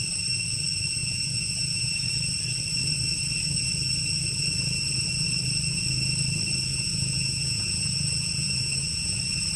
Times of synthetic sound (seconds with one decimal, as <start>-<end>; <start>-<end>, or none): 1.0-2.1; 6.7-9.2